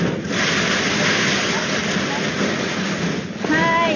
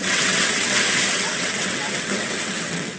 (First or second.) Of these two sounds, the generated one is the second